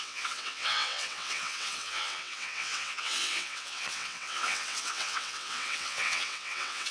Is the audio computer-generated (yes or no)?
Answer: yes